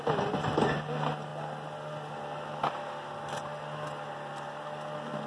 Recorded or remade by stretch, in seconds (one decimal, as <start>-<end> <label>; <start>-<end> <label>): 0.0-5.3 recorded